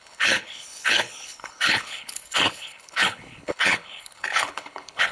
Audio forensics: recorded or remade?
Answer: remade